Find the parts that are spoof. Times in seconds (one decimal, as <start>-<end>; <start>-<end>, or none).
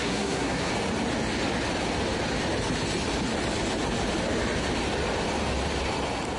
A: 0.0-0.7